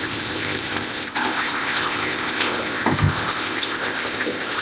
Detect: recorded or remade remade